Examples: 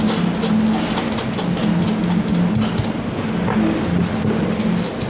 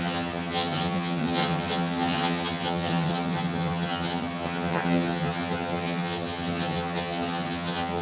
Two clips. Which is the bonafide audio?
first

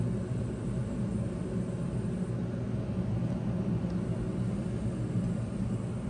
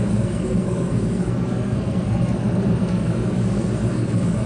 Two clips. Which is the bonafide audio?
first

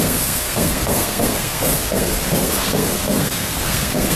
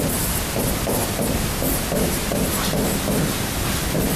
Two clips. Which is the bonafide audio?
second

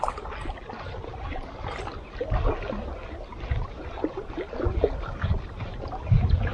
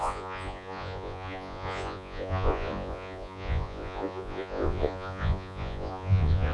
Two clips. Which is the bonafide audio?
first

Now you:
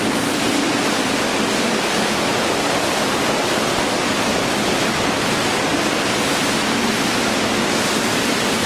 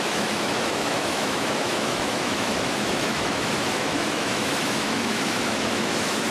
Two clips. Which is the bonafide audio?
first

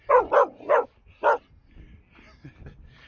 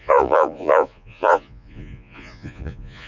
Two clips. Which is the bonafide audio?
first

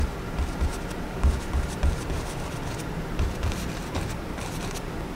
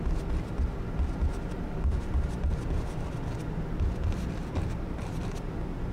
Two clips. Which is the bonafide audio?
second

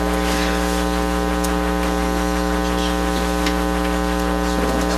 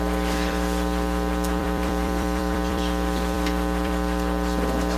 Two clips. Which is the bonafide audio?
first